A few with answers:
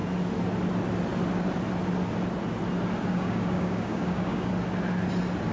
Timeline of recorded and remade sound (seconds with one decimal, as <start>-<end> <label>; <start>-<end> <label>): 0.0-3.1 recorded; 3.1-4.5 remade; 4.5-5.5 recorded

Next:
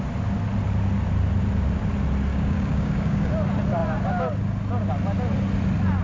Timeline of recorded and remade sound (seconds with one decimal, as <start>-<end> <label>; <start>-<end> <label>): 0.0-2.3 recorded; 2.3-3.3 remade; 3.3-6.0 recorded

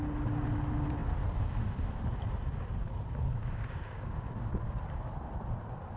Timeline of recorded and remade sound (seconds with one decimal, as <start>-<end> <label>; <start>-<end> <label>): 0.0-3.4 recorded; 3.4-4.3 remade; 4.3-6.0 recorded

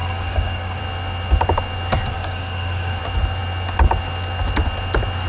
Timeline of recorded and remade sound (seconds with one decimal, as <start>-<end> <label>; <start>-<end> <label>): 0.0-0.8 remade; 0.8-2.1 recorded; 2.1-3.0 remade; 3.0-5.3 recorded

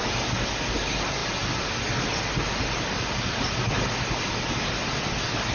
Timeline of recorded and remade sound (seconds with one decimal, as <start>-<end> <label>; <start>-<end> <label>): 0.0-5.5 recorded

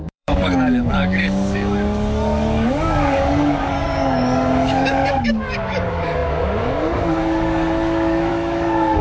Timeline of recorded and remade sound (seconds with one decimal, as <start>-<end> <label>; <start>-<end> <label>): 0.0-9.0 remade